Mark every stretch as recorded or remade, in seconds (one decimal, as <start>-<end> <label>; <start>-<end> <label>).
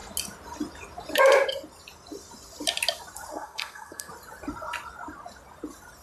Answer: 0.0-3.3 recorded; 3.3-4.1 remade; 4.1-6.0 recorded